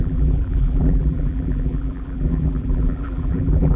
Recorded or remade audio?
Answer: remade